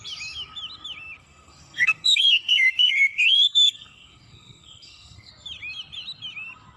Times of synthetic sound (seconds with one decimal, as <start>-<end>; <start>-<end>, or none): 1.2-5.3